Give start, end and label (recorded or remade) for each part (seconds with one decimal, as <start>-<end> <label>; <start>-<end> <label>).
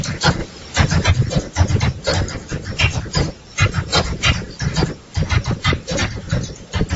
0.0-7.0 recorded